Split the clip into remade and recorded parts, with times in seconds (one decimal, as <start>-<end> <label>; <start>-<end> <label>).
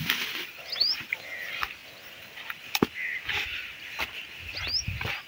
0.0-5.3 recorded